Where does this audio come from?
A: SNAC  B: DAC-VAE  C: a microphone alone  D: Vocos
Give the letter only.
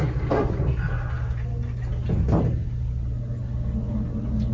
C